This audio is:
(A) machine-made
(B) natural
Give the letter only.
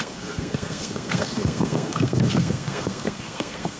A